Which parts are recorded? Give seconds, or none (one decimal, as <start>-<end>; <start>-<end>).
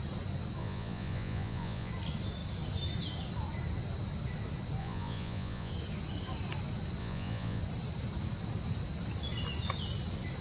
0.0-0.6; 1.9-4.8; 5.7-7.0; 7.6-10.4